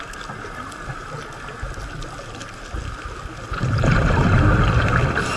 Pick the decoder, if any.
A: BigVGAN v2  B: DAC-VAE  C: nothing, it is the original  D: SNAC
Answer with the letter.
C